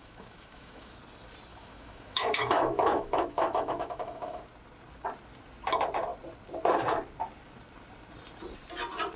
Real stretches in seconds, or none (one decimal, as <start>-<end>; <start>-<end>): 1.0-1.5; 4.4-9.2